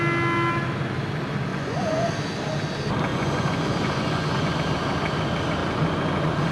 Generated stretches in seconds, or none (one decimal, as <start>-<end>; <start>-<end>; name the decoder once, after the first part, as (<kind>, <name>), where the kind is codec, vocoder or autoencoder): 1.5-2.1 (vocoder, Vocos); 3.1-4.5; 5.6-6.5